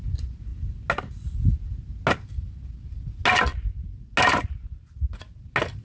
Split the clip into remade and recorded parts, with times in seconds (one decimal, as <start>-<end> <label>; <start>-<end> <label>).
0.0-5.8 recorded